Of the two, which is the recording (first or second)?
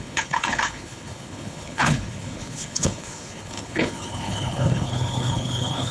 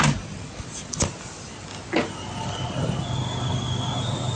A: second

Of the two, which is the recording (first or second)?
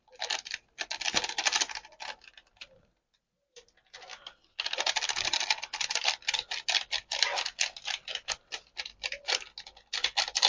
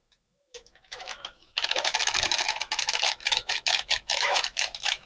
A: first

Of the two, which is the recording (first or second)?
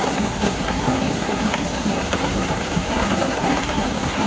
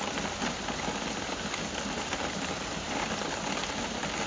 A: second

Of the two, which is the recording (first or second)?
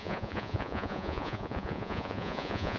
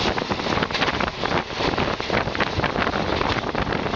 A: second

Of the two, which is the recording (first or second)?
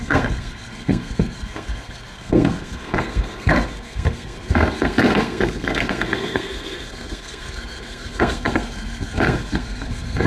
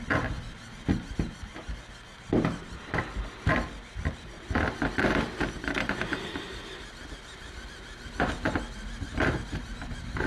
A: second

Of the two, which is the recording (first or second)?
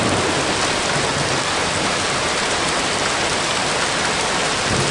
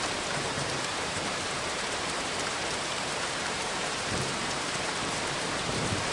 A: first